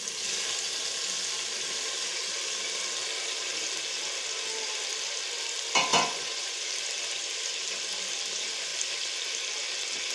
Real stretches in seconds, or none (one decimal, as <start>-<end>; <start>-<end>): 0.0-5.9; 6.6-10.1

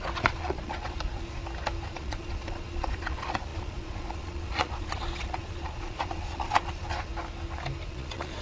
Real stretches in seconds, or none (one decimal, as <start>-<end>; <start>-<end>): 1.4-1.9; 7.1-7.9

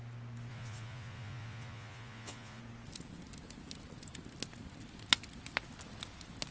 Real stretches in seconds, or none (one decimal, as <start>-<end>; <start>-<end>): 0.0-0.5; 2.6-6.5